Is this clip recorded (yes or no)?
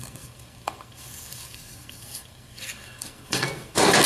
no